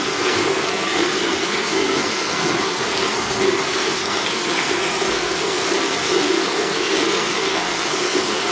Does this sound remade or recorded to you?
remade